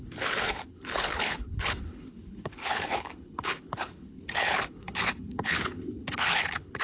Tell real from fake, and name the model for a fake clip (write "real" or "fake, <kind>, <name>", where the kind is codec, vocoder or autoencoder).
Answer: fake, codec, HILCodec